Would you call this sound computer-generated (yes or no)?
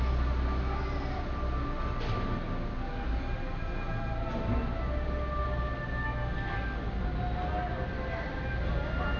no